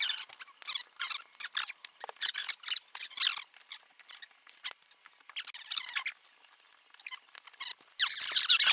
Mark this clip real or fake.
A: real